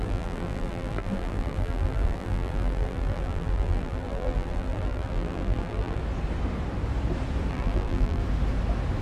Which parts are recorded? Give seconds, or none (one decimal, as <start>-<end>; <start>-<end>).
6.0-7.5; 8.2-9.0